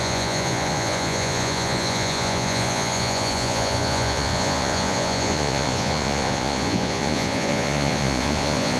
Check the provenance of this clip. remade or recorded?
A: remade